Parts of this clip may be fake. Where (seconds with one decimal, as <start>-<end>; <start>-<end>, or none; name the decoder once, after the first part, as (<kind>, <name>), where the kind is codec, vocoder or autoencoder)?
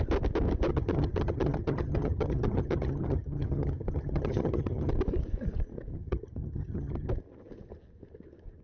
0.7-4.9 (vocoder, HiFi-GAN); 5.9-7.1